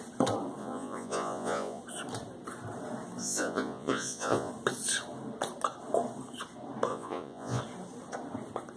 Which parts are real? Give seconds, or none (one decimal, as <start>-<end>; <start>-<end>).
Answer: 0.0-0.6; 1.8-3.2; 4.5-6.9; 7.6-8.8